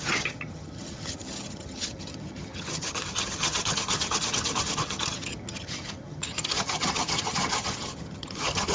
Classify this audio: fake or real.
fake